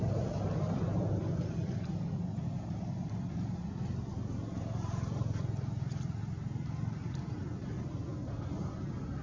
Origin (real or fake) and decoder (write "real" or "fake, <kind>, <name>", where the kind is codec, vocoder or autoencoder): real